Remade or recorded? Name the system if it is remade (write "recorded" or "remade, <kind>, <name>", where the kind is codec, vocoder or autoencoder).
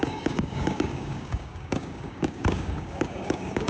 remade, codec, DAC